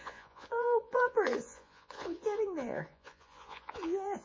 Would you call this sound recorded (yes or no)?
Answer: no